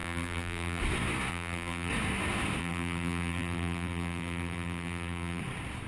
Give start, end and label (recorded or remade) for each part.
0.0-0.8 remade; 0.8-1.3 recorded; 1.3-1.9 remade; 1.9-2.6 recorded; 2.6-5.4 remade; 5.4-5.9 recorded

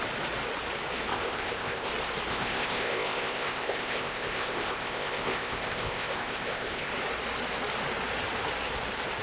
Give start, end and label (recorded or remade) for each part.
0.0-1.1 recorded; 1.1-1.9 remade; 1.9-2.3 recorded; 2.3-6.9 remade; 6.9-9.2 recorded